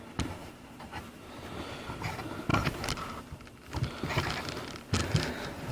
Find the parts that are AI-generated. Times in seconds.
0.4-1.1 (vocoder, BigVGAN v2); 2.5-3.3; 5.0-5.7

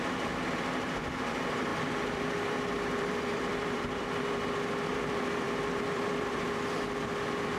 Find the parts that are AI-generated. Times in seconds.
1.7-4.2 (vocoder, BigVGAN v2); 4.9-6.5